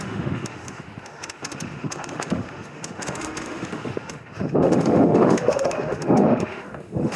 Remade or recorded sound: remade